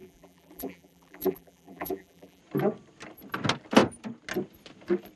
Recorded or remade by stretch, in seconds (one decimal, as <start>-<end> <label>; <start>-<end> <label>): 0.0-2.4 remade; 2.4-5.2 recorded